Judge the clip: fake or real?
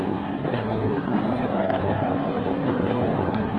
fake